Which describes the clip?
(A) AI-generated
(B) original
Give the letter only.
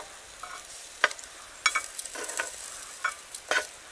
B